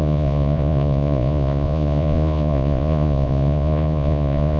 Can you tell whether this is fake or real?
fake